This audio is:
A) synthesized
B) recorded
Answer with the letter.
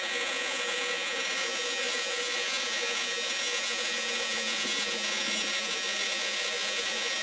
A